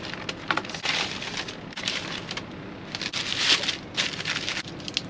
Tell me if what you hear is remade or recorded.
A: recorded